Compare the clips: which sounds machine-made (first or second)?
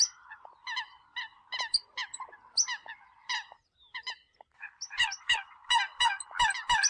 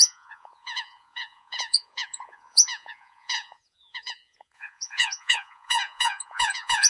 second